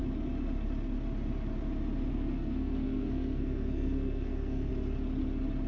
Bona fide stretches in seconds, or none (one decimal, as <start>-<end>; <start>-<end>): 0.0-2.1; 4.7-5.7